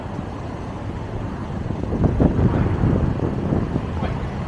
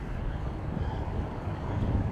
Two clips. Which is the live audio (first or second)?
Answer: first